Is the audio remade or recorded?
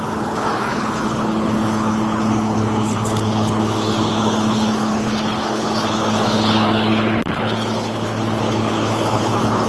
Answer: remade